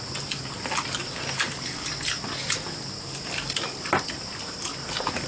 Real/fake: real